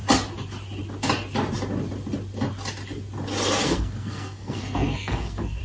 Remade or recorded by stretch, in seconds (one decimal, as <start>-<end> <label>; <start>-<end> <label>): 0.0-3.6 recorded; 3.6-5.6 remade